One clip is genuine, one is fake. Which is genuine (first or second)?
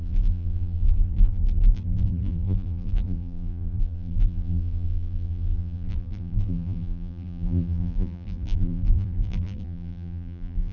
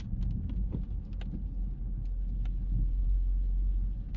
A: second